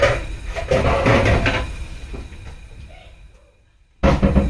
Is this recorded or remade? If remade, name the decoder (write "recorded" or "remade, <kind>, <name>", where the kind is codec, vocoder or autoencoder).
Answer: recorded